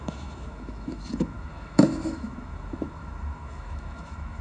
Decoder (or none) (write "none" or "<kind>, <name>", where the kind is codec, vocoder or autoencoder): autoencoder, DAC-VAE